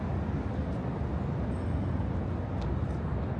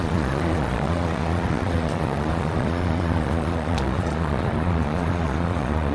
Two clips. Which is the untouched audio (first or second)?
first